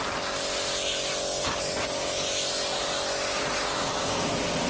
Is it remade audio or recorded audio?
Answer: recorded